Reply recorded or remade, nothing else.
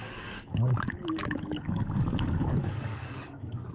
remade